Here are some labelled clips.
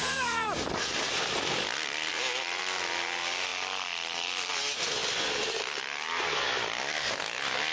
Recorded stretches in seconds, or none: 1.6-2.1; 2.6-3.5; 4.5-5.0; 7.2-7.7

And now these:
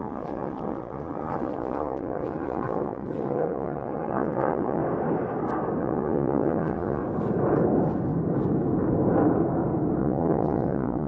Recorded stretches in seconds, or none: 4.8-5.8; 7.0-10.0